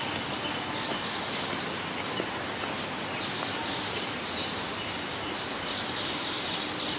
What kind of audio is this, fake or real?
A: real